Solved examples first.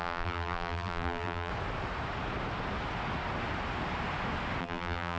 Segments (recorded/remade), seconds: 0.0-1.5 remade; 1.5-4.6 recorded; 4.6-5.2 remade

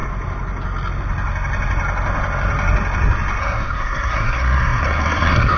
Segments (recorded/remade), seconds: 0.0-3.4 recorded; 3.4-5.6 remade

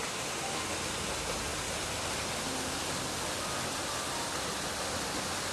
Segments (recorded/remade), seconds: 0.0-5.5 recorded